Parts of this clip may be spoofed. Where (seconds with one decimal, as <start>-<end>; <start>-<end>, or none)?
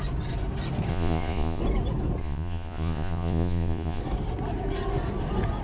0.9-1.6; 2.2-4.0